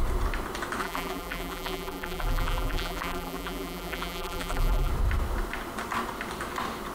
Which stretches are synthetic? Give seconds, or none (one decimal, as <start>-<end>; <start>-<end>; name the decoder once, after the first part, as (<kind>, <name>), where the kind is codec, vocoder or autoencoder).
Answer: 0.8-4.9 (vocoder, BigVGAN v2)